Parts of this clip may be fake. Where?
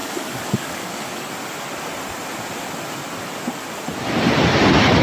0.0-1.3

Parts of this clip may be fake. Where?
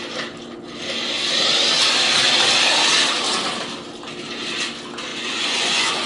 5.1-6.1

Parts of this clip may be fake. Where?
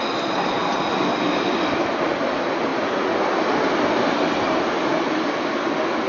none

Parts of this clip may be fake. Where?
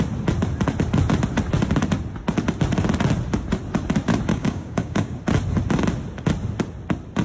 4.3-5.2